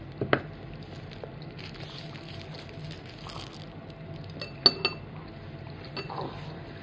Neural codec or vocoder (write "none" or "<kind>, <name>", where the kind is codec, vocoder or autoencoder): none